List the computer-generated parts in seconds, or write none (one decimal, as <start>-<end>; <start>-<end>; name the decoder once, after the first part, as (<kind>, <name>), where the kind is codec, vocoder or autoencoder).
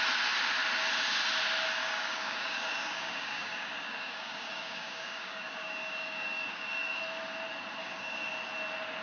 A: 1.8-7.0 (codec, DAC); 7.8-8.3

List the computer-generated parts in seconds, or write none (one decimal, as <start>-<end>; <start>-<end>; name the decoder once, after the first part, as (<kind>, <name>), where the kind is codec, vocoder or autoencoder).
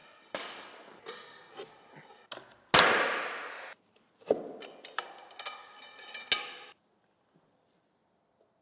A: none